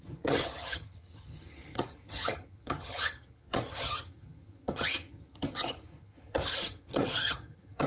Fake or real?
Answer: fake